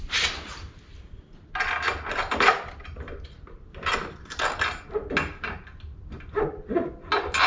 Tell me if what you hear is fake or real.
real